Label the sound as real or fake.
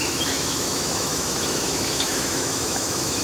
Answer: fake